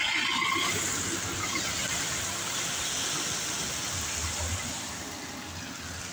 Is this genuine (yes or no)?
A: yes